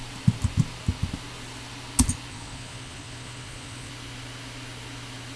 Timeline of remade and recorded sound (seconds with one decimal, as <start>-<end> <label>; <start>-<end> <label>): 0.0-2.3 recorded; 2.3-3.9 remade; 3.9-5.4 recorded